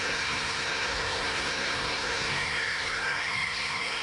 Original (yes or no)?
no